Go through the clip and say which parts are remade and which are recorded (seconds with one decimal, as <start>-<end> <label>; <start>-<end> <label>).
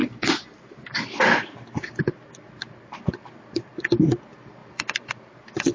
0.0-5.7 remade